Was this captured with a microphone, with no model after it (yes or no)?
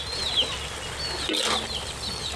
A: yes